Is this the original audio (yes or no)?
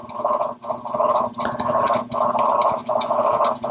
yes